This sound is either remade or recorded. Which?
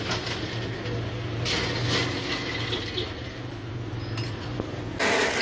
recorded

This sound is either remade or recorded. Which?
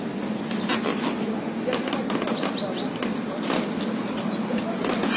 recorded